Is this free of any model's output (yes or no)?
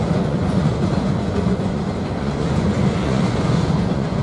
no